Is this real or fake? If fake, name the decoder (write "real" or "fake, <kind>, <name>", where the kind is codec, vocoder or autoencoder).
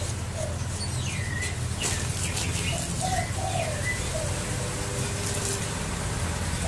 real